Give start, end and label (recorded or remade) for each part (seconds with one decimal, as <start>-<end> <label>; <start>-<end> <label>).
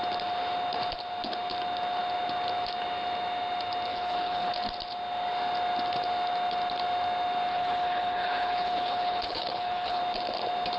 0.0-3.9 recorded; 3.9-4.5 remade; 4.5-7.5 recorded; 7.5-10.0 remade; 10.0-10.8 recorded